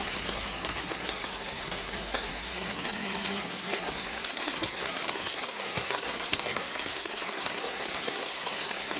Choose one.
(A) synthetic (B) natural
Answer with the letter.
A